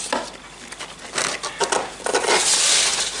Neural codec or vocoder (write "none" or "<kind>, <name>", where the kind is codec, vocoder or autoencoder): none